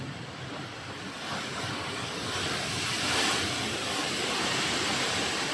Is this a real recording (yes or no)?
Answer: yes